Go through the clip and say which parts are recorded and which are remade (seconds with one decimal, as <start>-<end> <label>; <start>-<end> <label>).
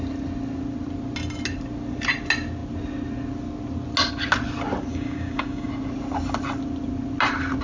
0.0-4.9 recorded; 4.9-5.7 remade; 5.7-7.6 recorded